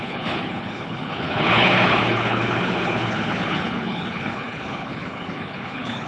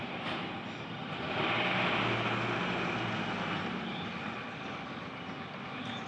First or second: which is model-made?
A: first